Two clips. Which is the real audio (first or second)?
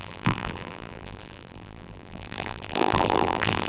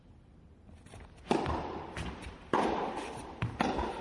second